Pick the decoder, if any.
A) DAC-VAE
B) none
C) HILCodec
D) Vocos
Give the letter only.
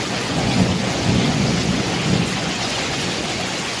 D